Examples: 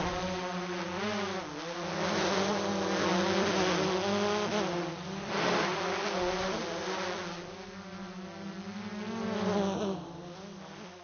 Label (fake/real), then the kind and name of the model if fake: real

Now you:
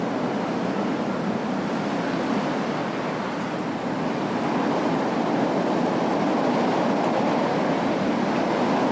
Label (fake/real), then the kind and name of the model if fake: real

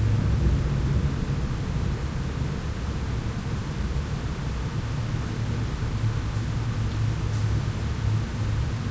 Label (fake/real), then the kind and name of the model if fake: real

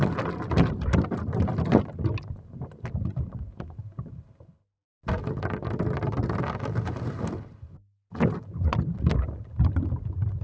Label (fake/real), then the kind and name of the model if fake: real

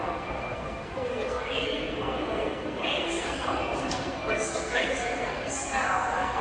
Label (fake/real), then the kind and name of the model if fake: fake, codec, SNAC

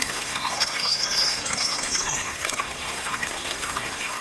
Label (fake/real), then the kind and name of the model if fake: fake, codec, SNAC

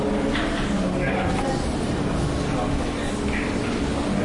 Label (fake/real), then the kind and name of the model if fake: real